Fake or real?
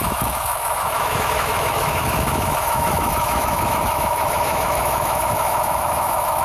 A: fake